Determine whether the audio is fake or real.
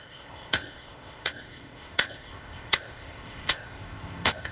fake